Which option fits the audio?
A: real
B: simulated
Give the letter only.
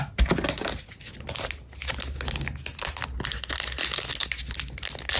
A